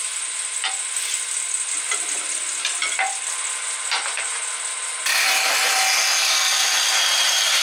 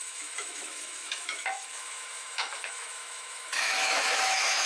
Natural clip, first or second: first